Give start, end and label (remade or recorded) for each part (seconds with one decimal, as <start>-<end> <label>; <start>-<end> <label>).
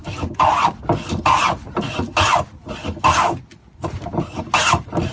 0.0-5.1 recorded